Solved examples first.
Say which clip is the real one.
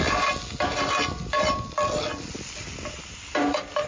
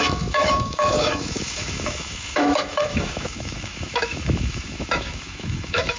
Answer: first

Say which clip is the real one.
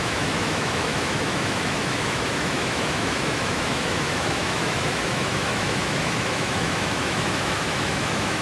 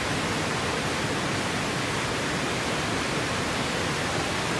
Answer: second